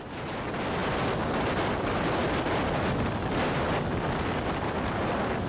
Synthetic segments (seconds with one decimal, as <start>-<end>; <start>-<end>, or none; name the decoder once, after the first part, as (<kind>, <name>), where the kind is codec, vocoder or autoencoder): 0.0-0.8 (vocoder, BigVGAN v2); 1.7-2.2